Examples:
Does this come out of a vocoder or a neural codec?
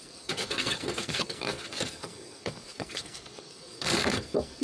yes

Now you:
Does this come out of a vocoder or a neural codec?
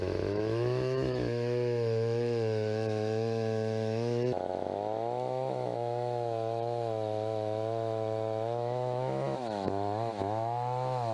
yes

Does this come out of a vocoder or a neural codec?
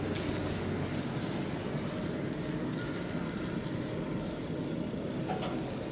no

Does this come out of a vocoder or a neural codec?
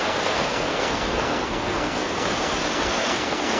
yes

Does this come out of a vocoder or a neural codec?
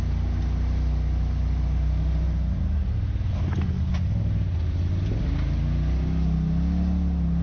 no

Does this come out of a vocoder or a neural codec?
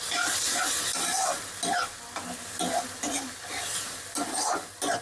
no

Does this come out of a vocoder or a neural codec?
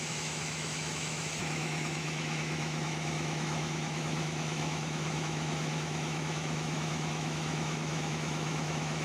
yes